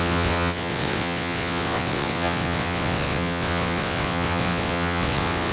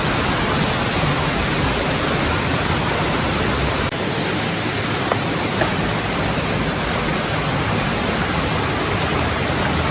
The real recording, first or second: second